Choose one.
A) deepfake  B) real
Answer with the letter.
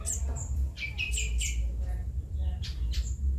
A